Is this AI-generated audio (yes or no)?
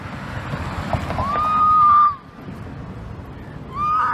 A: no